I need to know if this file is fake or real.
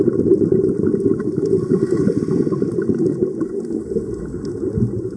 real